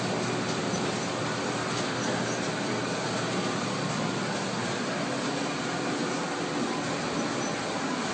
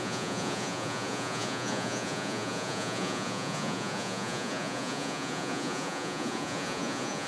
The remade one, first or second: second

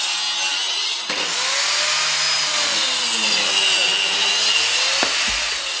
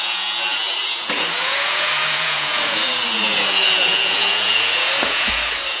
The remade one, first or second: second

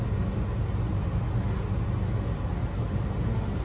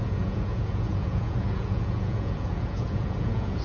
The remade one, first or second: second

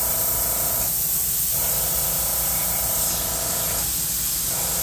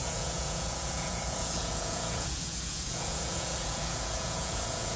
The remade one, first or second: second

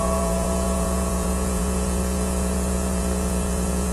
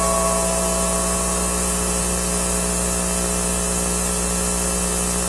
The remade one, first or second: first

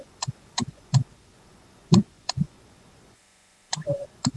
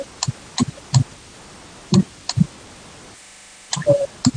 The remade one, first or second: first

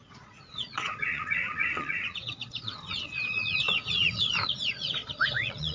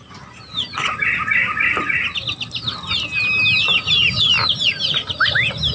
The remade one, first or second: first